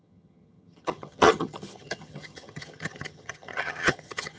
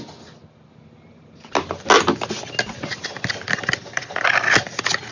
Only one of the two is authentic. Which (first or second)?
second